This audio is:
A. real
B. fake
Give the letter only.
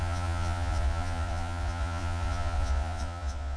B